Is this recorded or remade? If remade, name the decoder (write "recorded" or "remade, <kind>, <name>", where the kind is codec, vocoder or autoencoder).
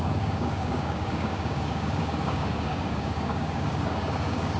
remade, codec, DAC